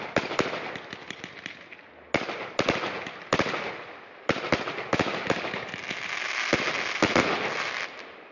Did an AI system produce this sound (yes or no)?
no